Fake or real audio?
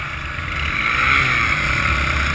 real